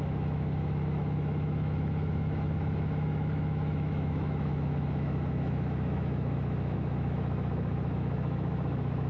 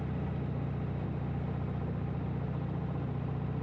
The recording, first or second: second